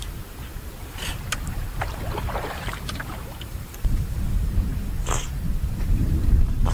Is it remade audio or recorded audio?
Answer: remade